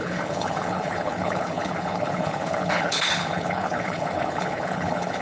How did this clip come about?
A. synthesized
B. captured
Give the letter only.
A